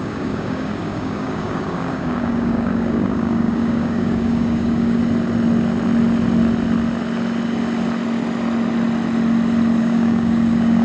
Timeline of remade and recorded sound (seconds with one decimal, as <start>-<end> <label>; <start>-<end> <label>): 0.0-5.0 remade; 5.0-9.8 recorded; 9.8-10.8 remade